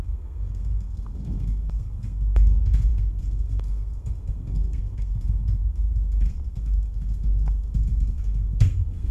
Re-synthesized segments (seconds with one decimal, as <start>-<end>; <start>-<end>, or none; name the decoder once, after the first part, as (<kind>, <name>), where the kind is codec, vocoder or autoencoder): 0.0-9.1 (codec, SNAC)